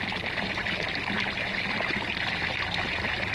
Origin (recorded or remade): recorded